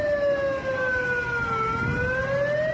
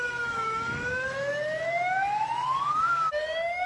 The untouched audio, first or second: first